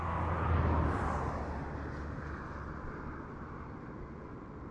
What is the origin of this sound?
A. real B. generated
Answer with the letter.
A